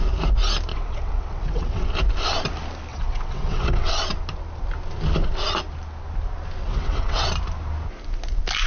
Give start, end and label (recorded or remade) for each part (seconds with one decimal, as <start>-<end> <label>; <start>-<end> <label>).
0.0-0.7 recorded; 0.7-1.9 remade; 1.9-2.9 recorded; 2.9-3.9 remade; 3.9-6.6 recorded; 6.6-7.2 remade; 7.2-8.7 recorded